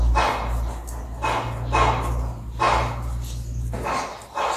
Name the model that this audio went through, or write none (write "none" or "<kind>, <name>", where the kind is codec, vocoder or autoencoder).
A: none